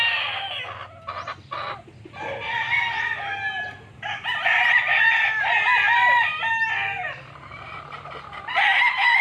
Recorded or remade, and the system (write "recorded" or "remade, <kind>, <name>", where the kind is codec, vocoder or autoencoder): recorded